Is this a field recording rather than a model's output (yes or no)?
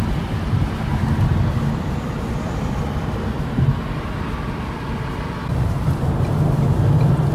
yes